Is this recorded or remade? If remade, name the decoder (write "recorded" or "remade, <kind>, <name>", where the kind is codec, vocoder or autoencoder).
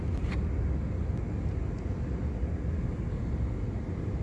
recorded